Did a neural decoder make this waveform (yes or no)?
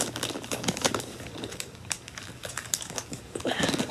yes